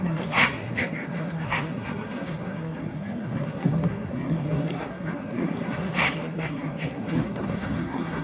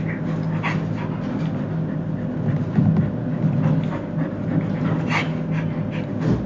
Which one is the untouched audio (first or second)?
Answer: second